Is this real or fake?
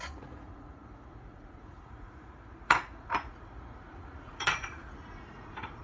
fake